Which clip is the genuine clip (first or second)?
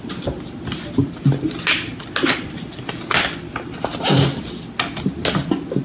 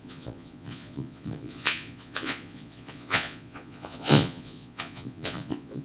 first